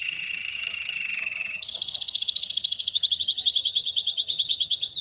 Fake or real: fake